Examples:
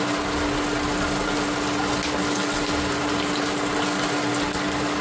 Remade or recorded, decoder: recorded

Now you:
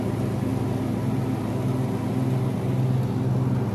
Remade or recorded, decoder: recorded